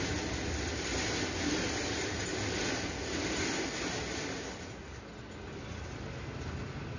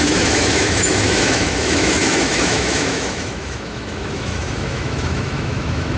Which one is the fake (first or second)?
second